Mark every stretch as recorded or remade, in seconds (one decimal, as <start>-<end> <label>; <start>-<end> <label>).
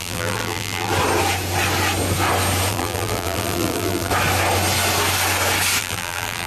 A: 0.0-0.9 remade; 0.9-2.7 recorded; 2.7-4.1 remade; 4.1-5.8 recorded; 5.8-6.5 remade